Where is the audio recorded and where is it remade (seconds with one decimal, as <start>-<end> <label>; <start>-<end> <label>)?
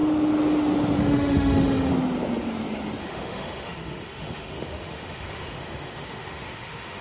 0.0-1.0 recorded; 1.0-1.9 remade; 1.9-3.0 recorded; 3.0-7.0 remade